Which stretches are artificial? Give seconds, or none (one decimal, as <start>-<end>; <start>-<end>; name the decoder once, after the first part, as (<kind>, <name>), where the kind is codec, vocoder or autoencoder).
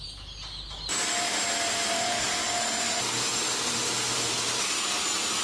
2.4-4.3 (vocoder, BigVGAN v2)